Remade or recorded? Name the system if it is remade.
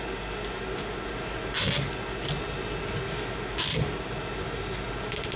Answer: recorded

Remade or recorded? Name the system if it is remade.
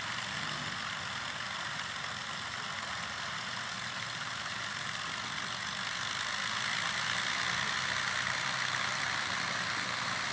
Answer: recorded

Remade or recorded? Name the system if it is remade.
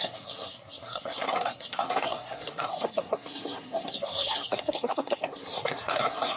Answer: remade, codec, SNAC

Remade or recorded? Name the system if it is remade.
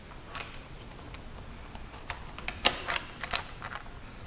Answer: recorded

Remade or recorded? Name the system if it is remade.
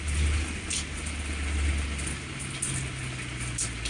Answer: recorded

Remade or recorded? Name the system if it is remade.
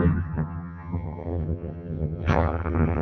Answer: remade, vocoder, HiFi-GAN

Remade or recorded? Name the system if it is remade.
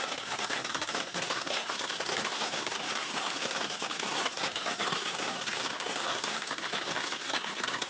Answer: remade, codec, SNAC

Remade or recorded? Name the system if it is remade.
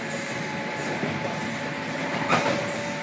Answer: recorded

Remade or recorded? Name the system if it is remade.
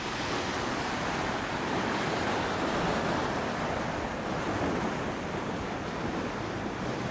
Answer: recorded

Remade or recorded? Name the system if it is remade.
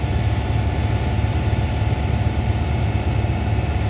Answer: recorded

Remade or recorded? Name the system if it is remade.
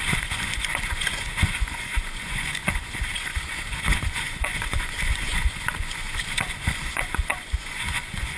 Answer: remade, vocoder, Vocos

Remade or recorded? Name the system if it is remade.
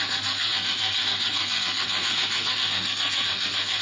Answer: remade, codec, SNAC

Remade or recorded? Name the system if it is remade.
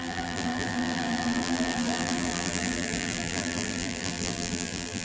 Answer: remade, vocoder, BigVGAN v2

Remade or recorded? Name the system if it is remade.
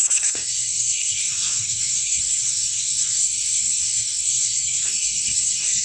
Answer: remade, codec, SNAC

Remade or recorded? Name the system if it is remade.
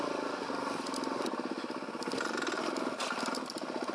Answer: recorded